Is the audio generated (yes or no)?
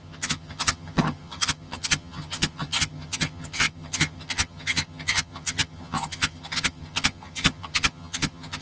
yes